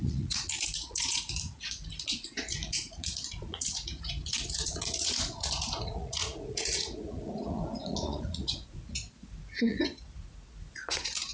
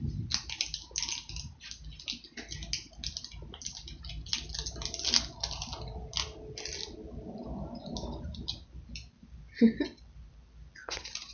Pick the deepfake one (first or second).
first